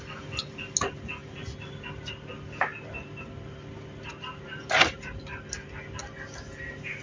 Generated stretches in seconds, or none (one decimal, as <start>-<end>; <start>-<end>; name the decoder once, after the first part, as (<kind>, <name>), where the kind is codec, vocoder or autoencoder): none